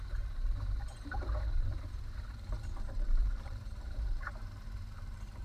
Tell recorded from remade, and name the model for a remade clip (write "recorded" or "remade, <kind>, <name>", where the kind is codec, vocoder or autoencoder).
remade, vocoder, BigVGAN v2